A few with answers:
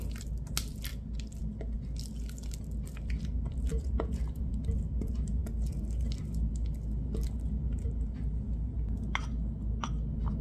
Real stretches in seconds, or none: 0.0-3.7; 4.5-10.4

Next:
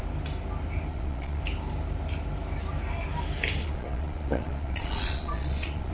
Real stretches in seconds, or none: 0.0-0.9; 1.4-3.6

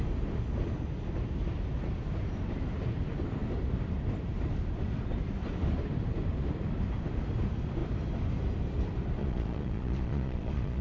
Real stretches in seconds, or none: 0.0-9.2

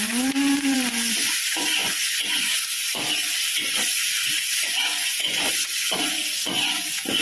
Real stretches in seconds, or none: none

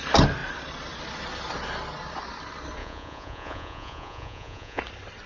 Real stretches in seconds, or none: 0.0-2.8; 4.8-5.3

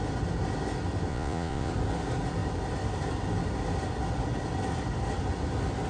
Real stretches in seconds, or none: 0.0-1.1; 1.7-5.9

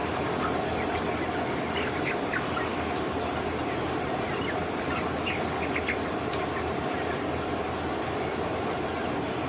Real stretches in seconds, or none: 0.0-9.5